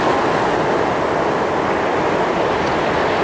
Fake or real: real